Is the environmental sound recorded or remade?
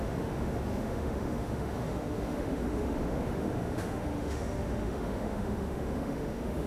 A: remade